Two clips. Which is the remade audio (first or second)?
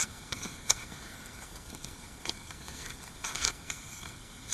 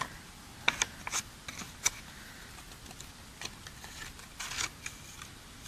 first